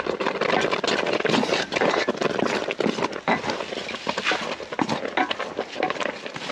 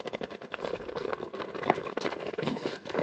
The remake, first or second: second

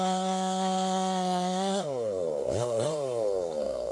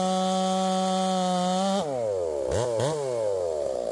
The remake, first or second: first